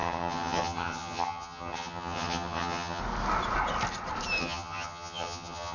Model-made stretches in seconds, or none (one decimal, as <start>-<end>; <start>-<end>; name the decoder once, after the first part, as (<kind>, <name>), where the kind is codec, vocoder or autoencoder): 0.0-3.0 (vocoder, HiFi-GAN); 4.4-5.7